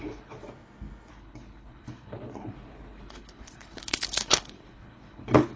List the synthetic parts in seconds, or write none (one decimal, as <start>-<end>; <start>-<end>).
0.0-0.4; 1.1-5.6